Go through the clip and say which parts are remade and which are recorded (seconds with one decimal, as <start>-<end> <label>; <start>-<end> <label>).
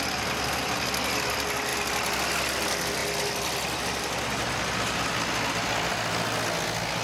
0.0-7.0 recorded